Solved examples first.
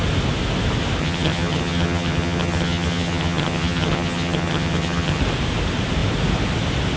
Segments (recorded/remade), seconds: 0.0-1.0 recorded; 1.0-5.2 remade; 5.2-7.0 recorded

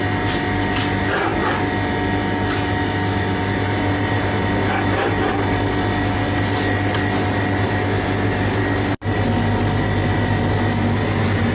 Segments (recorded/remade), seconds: 0.0-11.5 recorded

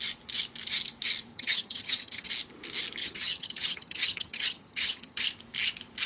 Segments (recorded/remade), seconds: 0.0-1.3 recorded; 1.3-2.3 remade; 2.3-3.0 recorded; 3.0-5.2 remade; 5.2-6.1 recorded

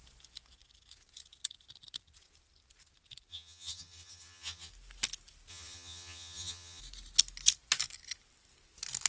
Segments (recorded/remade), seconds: 0.0-3.3 recorded; 3.3-4.7 remade; 4.7-5.5 recorded; 5.5-6.8 remade; 6.8-9.1 recorded

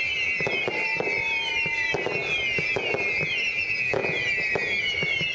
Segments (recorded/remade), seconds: 0.0-5.3 recorded

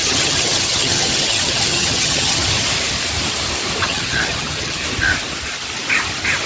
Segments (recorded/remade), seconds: 0.0-2.4 remade; 2.4-3.8 recorded; 3.8-4.8 remade; 4.8-6.5 recorded

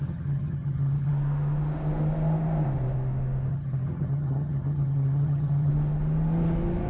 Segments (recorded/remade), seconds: 0.0-1.1 remade; 1.1-3.5 recorded; 3.5-5.7 remade; 5.7-6.9 recorded

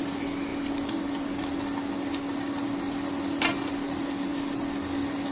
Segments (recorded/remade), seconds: 0.0-5.3 recorded